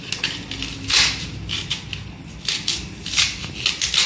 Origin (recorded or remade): recorded